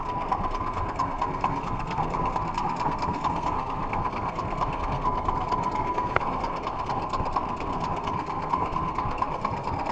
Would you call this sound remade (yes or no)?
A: yes